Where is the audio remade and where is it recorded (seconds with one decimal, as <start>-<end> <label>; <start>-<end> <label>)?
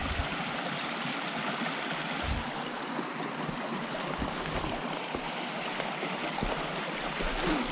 0.0-7.7 recorded